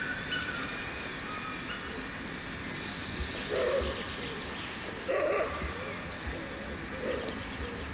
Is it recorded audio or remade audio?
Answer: recorded